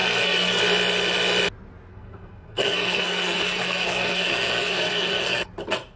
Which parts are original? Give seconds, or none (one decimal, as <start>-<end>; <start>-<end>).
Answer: 0.6-1.9; 5.5-6.0

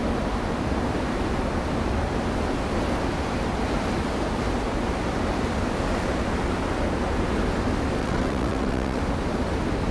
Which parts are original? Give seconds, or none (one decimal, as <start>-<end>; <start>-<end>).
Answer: 0.0-8.0; 9.0-9.9

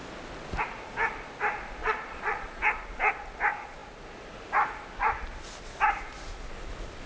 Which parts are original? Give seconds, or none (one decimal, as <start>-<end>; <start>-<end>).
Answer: 0.0-1.8; 2.6-7.1

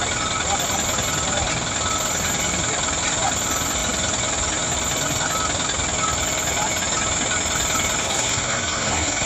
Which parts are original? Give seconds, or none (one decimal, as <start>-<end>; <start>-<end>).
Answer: 0.0-8.0

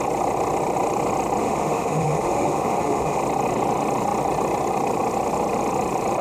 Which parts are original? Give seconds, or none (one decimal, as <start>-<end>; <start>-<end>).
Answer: 0.0-1.4; 3.2-6.2